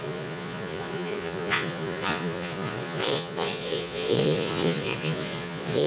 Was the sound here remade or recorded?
remade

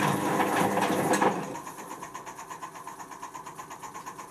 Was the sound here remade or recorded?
recorded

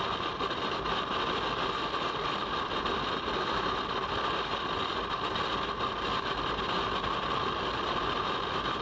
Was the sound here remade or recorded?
recorded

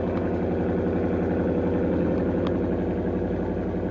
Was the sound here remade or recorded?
recorded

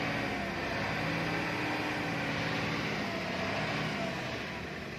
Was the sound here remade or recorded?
recorded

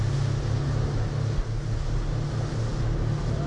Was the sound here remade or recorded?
recorded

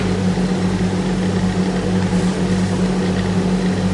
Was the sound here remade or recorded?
recorded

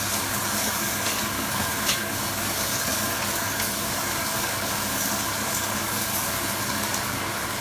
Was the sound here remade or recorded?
remade